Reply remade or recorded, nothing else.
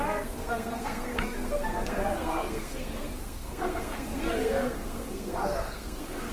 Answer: remade